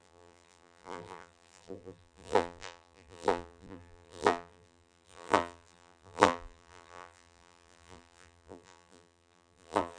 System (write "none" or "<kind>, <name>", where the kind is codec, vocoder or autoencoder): vocoder, BigVGAN v2